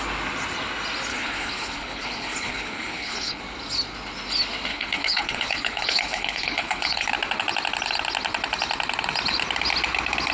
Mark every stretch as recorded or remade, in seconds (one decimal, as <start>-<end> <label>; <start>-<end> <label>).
0.0-1.1 recorded; 1.1-3.4 remade; 3.4-4.7 recorded; 4.7-7.1 remade; 7.1-10.3 recorded